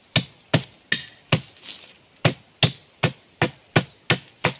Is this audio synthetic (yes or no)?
no